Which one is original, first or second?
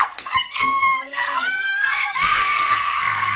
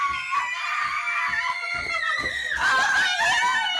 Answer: second